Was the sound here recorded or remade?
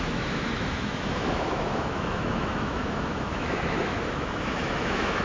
remade